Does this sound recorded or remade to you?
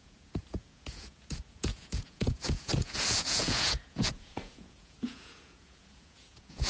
remade